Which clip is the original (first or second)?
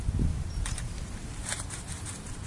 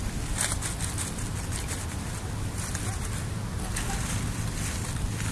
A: second